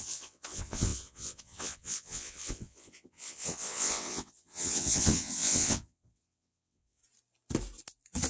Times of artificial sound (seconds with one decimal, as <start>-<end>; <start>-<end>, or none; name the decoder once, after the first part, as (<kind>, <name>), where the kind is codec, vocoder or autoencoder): 0.0-7.0 (vocoder, WaveNeXt)